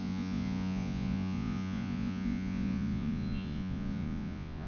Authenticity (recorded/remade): remade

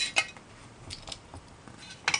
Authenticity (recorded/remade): recorded